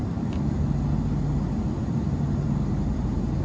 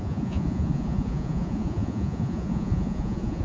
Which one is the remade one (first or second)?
second